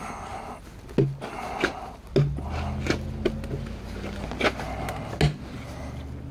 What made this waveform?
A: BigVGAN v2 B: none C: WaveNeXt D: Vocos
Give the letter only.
B